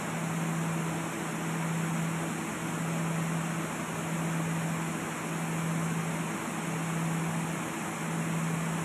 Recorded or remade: recorded